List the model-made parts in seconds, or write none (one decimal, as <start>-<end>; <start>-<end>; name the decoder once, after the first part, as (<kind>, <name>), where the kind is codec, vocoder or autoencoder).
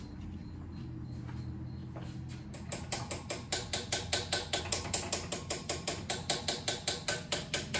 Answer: none